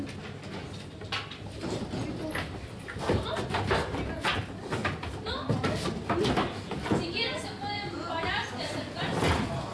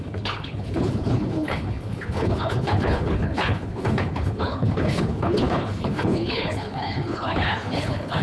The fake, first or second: second